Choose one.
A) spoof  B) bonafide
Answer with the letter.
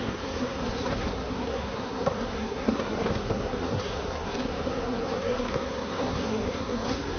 A